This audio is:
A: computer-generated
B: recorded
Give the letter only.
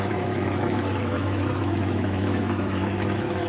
A